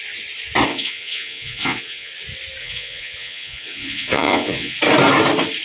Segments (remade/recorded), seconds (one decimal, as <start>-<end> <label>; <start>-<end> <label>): 0.0-0.7 recorded; 0.7-2.1 remade; 2.1-2.6 recorded; 2.6-4.8 remade; 4.8-5.6 recorded